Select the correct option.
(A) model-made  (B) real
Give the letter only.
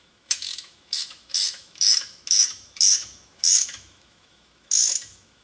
A